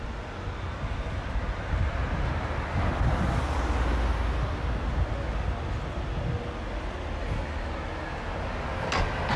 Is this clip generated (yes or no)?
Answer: no